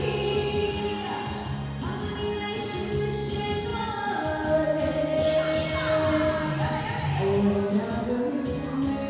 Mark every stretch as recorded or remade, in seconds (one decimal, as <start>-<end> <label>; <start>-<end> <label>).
0.0-9.1 recorded